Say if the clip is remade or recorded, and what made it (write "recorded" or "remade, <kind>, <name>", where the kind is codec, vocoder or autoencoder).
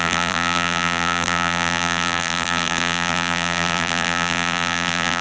remade, vocoder, BigVGAN v2